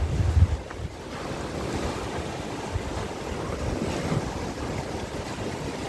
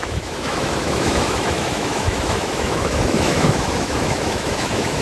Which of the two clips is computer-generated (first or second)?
second